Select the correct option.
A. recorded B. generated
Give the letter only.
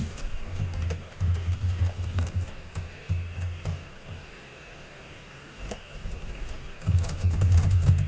B